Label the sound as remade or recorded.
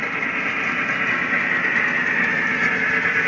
recorded